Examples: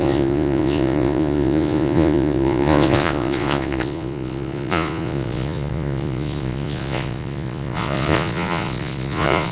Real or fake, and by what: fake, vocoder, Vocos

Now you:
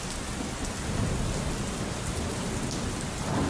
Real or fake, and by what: real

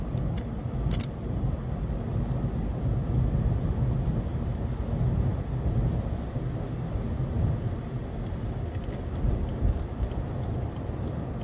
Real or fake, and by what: real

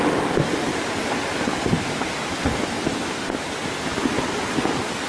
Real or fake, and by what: real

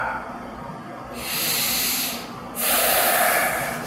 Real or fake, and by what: real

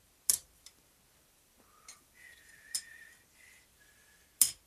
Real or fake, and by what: fake, vocoder, BigVGAN v2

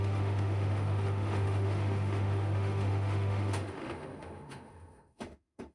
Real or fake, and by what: fake, autoencoder, DAC-VAE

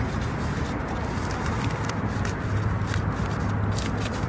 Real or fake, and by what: real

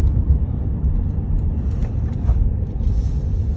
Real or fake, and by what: fake, vocoder, BigVGAN v2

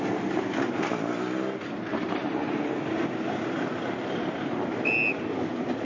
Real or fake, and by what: real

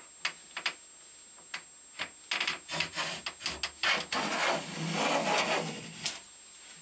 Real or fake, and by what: real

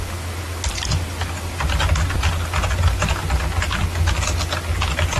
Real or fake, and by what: real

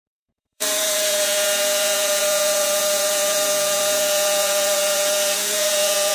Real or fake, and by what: fake, vocoder, Vocos